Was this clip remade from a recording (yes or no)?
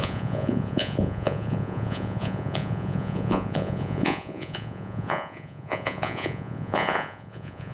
yes